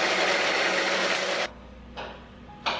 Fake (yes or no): no